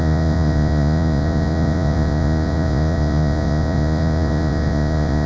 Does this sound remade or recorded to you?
remade